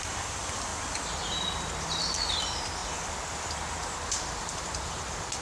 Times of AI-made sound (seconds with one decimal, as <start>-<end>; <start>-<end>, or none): 0.0-0.7; 2.4-2.8; 3.7-5.4